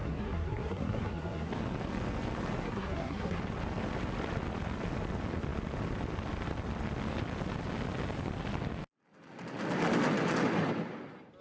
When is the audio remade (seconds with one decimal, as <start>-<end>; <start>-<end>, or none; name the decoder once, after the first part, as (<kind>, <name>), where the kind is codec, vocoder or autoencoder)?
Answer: 0.0-1.5 (codec, SNAC); 2.6-3.4